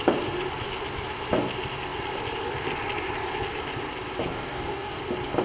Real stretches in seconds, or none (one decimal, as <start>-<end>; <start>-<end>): 0.0-4.3; 5.0-5.4